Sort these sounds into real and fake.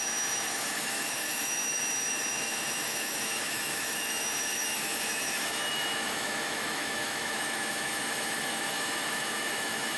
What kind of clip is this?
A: fake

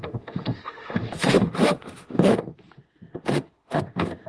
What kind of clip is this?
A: fake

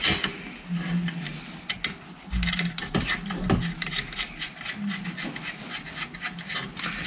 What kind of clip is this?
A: real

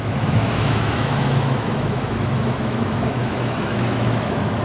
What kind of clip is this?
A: fake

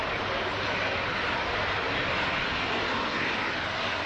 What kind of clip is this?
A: real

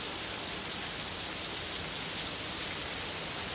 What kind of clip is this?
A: real